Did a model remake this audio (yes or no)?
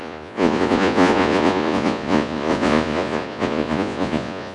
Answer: yes